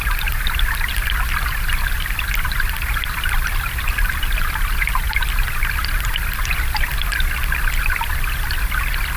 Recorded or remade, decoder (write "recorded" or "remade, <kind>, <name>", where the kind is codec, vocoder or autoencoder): recorded